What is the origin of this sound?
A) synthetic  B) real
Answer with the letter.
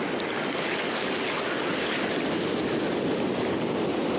B